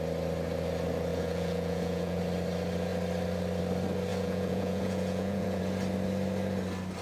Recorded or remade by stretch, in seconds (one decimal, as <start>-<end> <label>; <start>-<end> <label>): 0.0-1.1 recorded; 1.1-2.2 remade; 2.2-4.1 recorded; 4.1-5.6 remade; 5.6-7.0 recorded